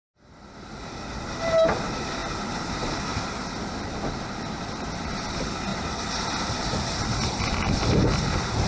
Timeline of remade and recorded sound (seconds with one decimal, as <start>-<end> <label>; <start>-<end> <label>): 0.0-8.7 recorded